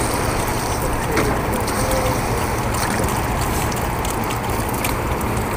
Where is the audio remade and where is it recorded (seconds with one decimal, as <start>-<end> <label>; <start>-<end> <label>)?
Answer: 0.0-5.6 remade